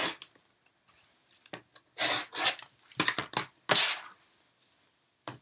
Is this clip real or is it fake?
real